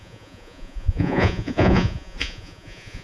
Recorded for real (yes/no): no